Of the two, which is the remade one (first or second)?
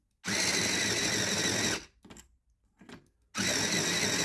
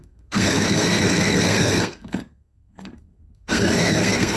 second